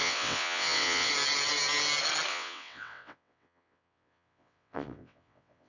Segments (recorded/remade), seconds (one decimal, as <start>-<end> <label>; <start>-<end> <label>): 0.0-1.1 remade; 1.1-2.3 recorded; 2.3-5.7 remade